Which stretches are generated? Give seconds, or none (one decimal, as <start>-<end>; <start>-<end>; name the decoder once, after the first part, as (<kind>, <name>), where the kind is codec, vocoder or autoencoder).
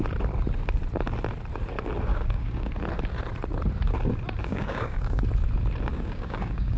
2.1-2.7 (codec, DAC); 4.4-5.2; 5.9-6.8